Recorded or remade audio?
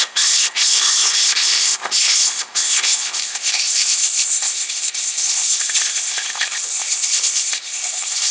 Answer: remade